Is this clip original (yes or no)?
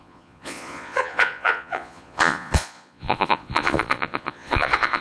no